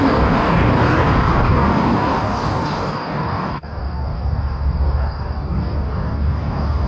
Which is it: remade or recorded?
remade